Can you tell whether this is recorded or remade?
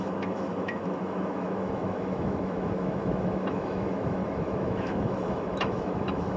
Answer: remade